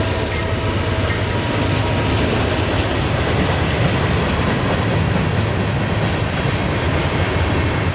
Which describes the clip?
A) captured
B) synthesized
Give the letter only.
A